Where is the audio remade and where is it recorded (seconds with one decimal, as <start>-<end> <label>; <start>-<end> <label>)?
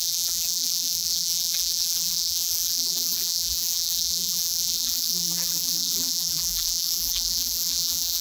0.0-8.2 remade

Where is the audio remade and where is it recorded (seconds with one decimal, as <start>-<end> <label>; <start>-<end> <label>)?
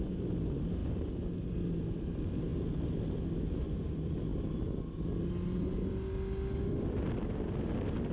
0.0-8.1 recorded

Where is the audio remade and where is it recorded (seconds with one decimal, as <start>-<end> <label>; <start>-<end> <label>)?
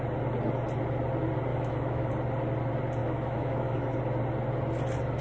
0.0-1.5 recorded; 1.5-2.1 remade; 2.1-3.0 recorded; 3.0-4.0 remade; 4.0-5.2 recorded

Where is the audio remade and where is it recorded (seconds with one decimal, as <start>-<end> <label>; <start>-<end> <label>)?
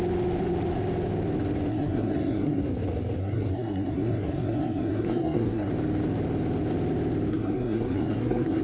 0.0-1.7 recorded; 1.7-2.6 remade; 2.6-3.2 recorded; 3.2-5.7 remade; 5.7-7.3 recorded; 7.3-8.6 remade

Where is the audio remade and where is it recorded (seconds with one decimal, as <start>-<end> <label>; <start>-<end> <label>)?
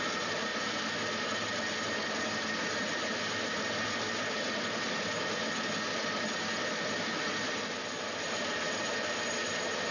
0.0-9.9 recorded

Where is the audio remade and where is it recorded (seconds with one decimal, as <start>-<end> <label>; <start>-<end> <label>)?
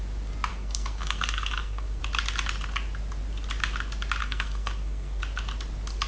0.0-0.5 recorded; 0.5-2.0 remade; 2.0-4.2 recorded; 4.2-5.2 remade; 5.2-6.1 recorded